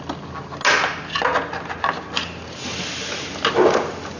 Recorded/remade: recorded